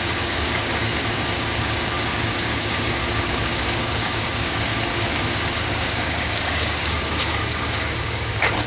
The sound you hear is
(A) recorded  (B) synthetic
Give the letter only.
B